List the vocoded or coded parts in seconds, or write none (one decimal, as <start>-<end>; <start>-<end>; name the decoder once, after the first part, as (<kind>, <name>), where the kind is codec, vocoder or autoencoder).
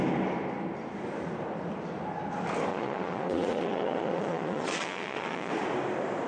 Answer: 2.7-5.5 (vocoder, Vocos)